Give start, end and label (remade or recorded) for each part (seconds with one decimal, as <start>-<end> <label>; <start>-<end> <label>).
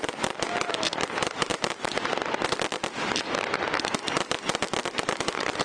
0.0-5.6 recorded